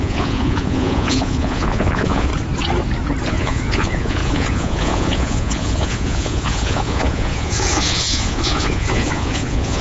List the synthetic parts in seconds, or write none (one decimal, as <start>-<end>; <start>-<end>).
0.0-2.3; 3.3-9.8